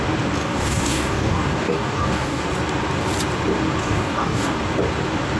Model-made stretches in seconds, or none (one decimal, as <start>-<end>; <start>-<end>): 0.4-2.4; 3.8-4.6